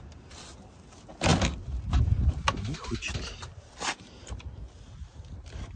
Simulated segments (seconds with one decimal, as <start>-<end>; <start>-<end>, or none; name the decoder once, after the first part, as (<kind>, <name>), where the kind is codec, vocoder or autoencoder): none